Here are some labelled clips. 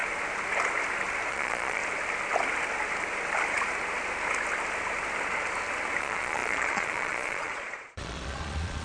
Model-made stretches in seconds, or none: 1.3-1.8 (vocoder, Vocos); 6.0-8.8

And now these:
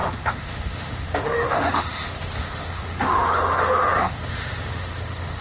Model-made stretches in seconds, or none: 0.0-5.4 (autoencoder, DAC-VAE)

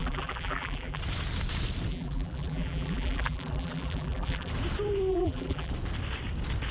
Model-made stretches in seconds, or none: 0.0-1.0 (vocoder, BigVGAN v2); 1.9-4.5; 5.1-5.7

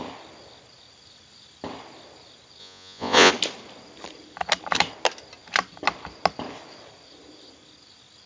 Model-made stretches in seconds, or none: 2.6-3.3 (vocoder, Vocos)

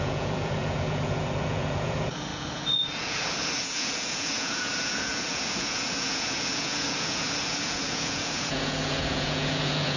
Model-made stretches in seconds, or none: 0.0-10.0 (vocoder, Vocos)